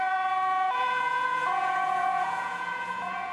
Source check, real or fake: fake